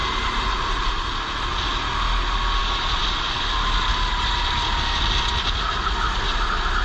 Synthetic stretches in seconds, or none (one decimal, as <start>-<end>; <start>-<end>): none